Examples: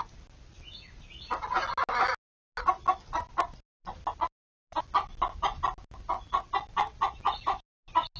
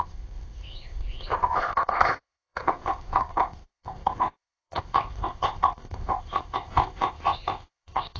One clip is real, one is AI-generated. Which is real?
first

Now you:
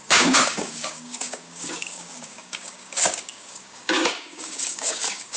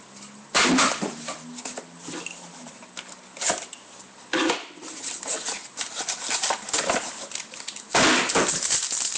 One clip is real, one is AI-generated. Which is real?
second